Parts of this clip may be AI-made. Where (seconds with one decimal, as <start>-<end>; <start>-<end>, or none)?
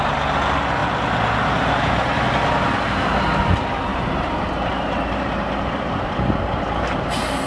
3.9-7.5